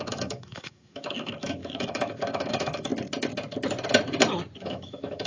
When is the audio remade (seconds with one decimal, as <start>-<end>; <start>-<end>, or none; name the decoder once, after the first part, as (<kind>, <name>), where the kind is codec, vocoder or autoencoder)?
0.0-2.9 (autoencoder, DAC-VAE); 4.6-5.3